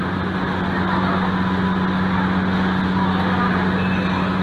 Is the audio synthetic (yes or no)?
no